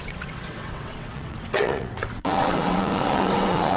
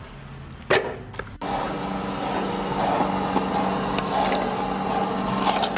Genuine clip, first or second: second